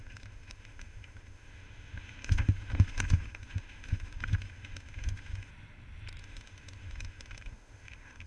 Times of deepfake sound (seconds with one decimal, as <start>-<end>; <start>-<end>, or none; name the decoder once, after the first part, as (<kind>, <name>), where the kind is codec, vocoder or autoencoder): 0.0-5.5 (autoencoder, DAC-VAE); 6.2-8.3